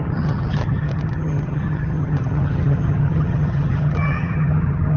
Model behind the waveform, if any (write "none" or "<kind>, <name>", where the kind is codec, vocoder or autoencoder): vocoder, HiFi-GAN